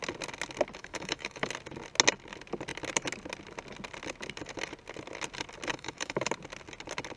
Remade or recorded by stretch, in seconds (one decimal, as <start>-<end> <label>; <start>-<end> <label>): 0.0-0.8 recorded; 0.8-1.5 remade; 1.5-5.7 recorded; 5.7-6.3 remade; 6.3-7.2 recorded

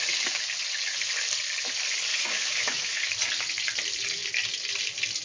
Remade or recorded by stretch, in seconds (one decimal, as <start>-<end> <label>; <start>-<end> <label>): 0.0-2.1 recorded; 2.1-3.0 remade; 3.0-5.2 recorded

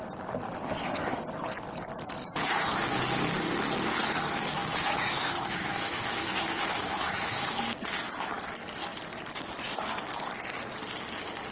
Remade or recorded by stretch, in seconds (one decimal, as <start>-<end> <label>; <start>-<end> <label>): 0.0-4.6 recorded; 4.6-7.6 remade; 7.6-11.5 recorded

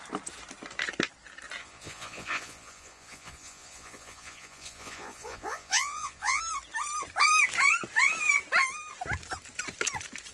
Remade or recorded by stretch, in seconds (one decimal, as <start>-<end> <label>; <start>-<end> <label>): 0.0-1.6 recorded; 1.6-6.4 remade; 6.4-10.3 recorded